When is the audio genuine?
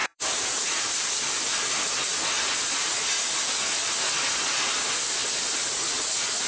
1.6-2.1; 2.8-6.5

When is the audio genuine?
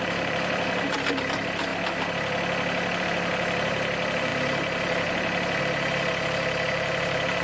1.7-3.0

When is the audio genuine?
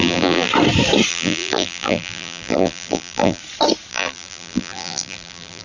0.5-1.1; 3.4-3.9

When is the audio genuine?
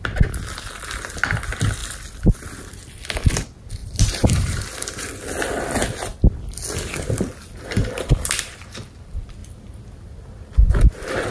0.0-3.8; 4.6-11.3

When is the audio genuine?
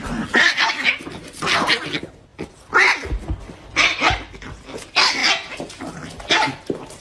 0.0-2.3; 3.7-7.0